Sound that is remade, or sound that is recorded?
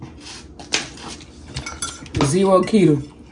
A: recorded